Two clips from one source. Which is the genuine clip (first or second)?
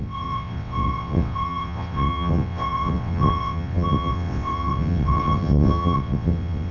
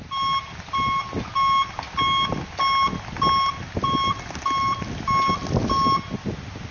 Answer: second